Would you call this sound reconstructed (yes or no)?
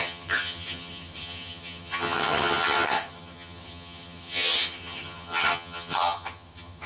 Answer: yes